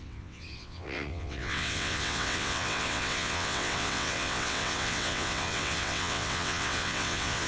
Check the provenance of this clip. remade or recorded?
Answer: remade